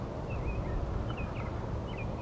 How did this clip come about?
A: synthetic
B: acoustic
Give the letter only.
B